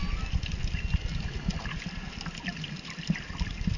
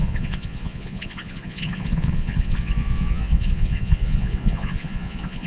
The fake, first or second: second